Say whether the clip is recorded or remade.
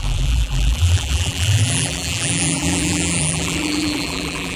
remade